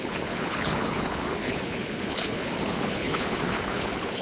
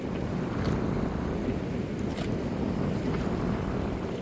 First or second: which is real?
second